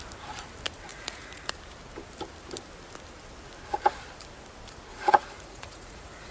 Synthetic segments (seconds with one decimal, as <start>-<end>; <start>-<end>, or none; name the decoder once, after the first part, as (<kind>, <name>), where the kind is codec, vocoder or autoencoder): 0.9-1.5 (vocoder, Vocos); 4.9-6.3